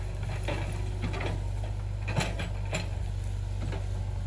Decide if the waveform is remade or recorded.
recorded